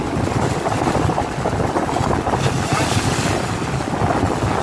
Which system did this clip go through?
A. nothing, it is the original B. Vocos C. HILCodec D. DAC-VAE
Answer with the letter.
A